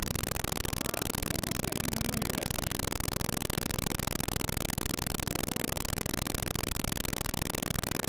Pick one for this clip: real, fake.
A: real